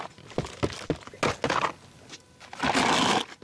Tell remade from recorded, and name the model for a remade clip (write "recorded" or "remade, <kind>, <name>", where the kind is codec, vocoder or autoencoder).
recorded